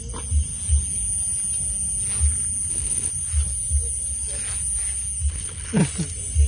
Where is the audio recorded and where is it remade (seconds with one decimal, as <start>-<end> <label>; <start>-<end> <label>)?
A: 0.0-2.7 recorded; 2.7-3.1 remade; 3.1-5.3 recorded; 5.3-5.8 remade; 5.8-6.5 recorded

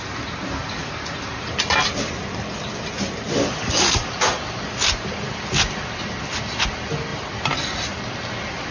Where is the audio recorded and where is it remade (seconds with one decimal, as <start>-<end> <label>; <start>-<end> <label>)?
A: 0.0-7.1 recorded; 7.1-8.7 remade

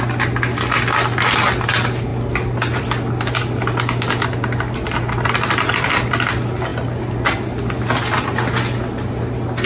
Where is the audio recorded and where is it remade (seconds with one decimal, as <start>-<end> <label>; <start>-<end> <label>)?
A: 0.0-9.7 recorded

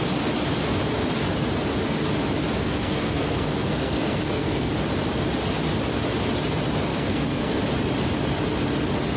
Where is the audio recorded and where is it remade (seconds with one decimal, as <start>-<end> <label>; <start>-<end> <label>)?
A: 0.0-2.6 recorded; 2.6-4.7 remade; 4.7-6.9 recorded; 6.9-7.6 remade; 7.6-9.2 recorded

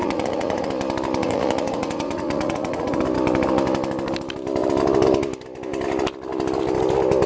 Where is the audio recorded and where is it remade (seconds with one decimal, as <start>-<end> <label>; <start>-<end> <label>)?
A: 0.0-0.7 remade; 0.7-1.2 recorded; 1.2-3.0 remade; 3.0-7.3 recorded